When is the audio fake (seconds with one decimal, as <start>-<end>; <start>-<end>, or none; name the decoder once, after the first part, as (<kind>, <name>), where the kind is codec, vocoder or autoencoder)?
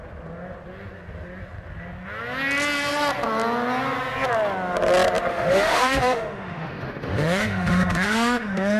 5.3-8.8 (autoencoder, DAC-VAE)